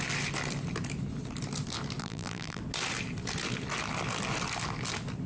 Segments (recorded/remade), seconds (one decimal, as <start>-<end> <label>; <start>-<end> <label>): 0.0-2.0 recorded; 2.0-2.6 remade; 2.6-5.3 recorded